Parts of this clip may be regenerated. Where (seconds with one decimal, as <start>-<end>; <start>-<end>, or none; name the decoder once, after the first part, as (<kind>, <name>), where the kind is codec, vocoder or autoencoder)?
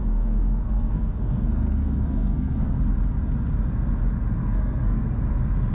0.0-2.7 (codec, SNAC); 4.4-5.0